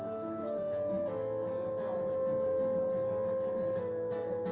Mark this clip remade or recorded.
recorded